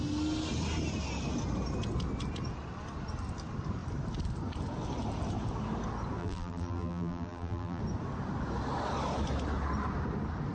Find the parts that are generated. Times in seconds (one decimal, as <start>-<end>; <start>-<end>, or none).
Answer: 6.2-7.8